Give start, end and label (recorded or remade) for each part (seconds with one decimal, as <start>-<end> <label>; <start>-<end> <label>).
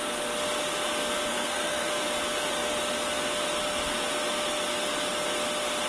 0.0-1.3 recorded; 1.3-1.9 remade; 1.9-5.9 recorded